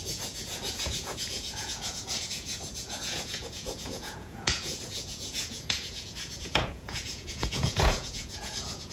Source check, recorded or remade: remade